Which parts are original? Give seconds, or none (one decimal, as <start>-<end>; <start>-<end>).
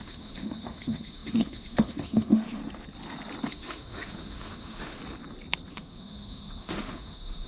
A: 2.6-3.5; 5.0-5.7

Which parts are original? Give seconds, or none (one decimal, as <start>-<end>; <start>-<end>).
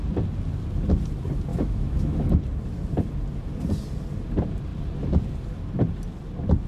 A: 0.0-1.5; 2.4-6.7